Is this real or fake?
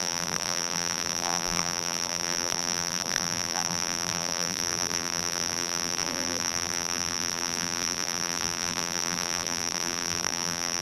fake